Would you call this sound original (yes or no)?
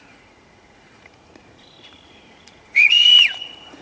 no